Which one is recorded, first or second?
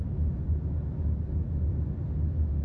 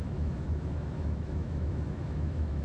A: first